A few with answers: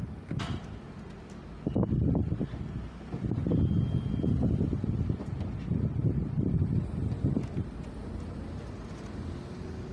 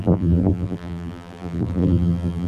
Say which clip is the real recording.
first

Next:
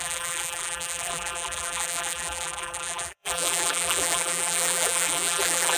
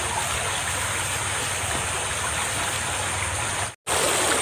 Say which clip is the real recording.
second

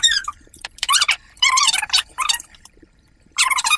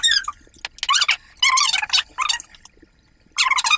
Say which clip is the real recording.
second